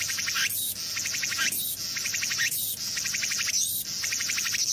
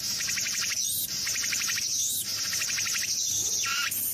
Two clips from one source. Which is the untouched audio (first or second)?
first